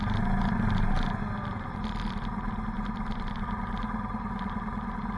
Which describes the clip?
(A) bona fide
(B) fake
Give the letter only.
A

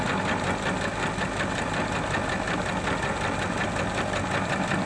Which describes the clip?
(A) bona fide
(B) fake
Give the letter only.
A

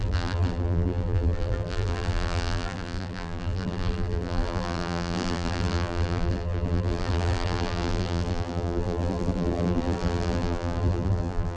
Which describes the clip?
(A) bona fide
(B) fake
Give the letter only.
B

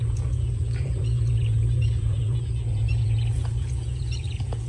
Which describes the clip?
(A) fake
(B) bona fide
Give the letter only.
A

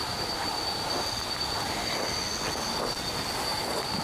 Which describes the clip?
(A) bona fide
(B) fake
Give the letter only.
A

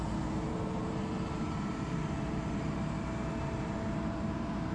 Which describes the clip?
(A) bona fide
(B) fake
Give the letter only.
B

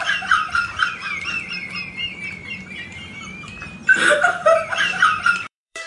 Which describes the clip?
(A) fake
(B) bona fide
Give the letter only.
A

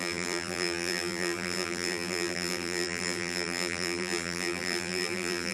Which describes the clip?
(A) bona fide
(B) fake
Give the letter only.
B